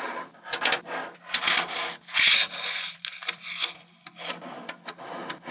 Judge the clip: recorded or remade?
recorded